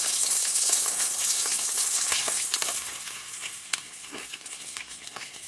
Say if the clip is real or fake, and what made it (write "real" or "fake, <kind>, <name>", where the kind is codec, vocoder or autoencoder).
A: fake, codec, SNAC